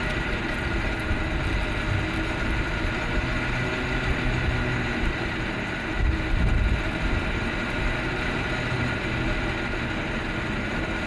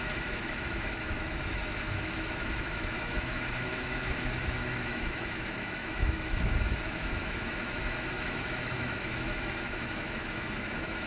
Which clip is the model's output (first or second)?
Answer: second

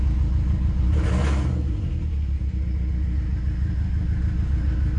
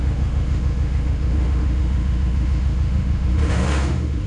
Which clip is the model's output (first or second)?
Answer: second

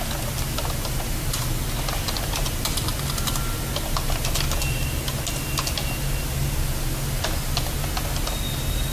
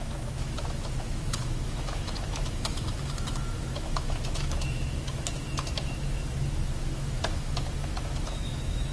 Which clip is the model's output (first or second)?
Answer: second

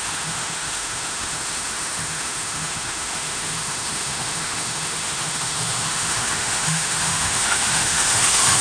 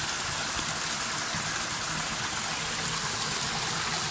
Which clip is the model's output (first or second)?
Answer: first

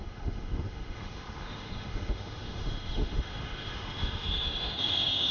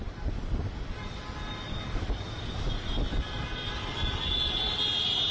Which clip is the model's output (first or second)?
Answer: first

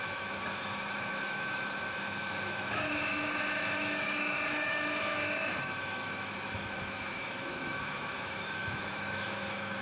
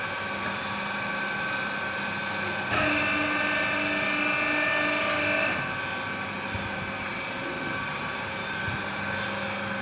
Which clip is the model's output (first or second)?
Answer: first